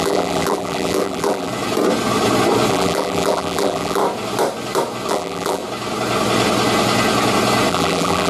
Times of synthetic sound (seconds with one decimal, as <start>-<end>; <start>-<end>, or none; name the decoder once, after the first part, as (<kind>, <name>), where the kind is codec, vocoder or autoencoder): 0.0-1.5 (vocoder, BigVGAN v2); 2.7-4.0; 5.1-5.6; 7.7-8.3